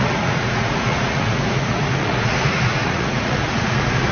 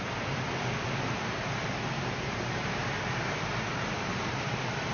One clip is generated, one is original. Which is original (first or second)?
second